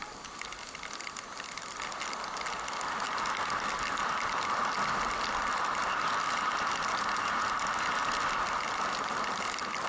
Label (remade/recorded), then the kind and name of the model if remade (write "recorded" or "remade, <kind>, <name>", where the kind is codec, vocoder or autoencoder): recorded